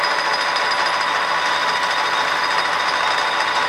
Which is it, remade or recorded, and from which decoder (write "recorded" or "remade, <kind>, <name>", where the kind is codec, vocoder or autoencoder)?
recorded